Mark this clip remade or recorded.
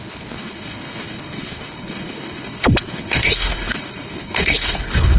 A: remade